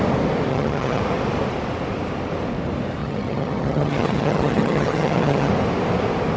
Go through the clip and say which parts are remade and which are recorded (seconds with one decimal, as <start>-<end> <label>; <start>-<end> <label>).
0.0-0.5 recorded; 0.5-1.0 remade; 1.0-3.0 recorded; 3.0-5.5 remade; 5.5-6.4 recorded